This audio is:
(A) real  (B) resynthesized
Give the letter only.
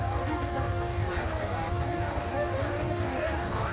B